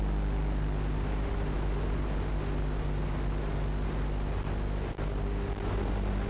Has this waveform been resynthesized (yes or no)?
no